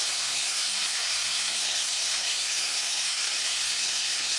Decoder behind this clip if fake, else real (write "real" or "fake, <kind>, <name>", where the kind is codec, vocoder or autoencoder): fake, codec, SNAC